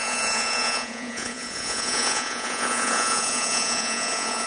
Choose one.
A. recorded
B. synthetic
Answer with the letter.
B